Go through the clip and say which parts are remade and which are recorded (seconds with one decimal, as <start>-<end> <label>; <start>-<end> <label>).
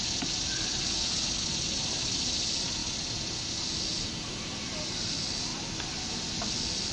0.0-1.5 recorded; 1.5-2.1 remade; 2.1-6.9 recorded